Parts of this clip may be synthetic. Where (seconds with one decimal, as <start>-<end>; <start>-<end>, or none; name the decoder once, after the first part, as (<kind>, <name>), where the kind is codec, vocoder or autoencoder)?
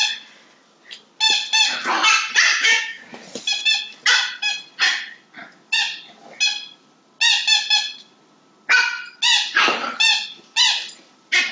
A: 2.5-3.1 (codec, DAC)